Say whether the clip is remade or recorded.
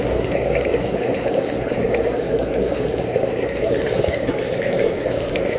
remade